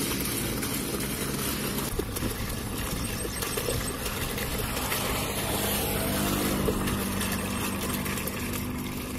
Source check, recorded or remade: recorded